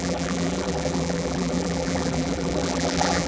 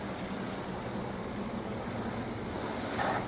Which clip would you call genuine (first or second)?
second